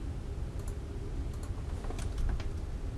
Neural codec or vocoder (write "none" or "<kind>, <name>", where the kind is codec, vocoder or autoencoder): none